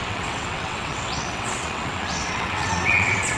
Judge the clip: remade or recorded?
remade